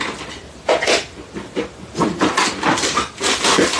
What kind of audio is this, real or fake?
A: real